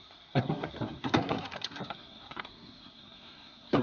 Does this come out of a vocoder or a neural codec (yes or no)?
yes